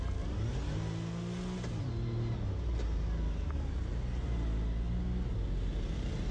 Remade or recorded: recorded